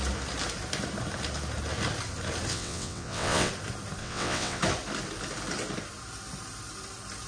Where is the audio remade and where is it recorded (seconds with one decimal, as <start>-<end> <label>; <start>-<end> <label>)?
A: 0.0-2.5 recorded; 2.5-3.5 remade; 3.5-4.0 recorded; 4.0-4.6 remade; 4.6-7.3 recorded